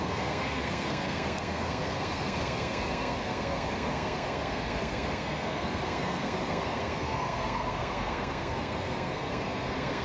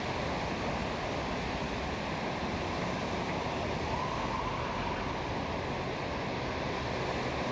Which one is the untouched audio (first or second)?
second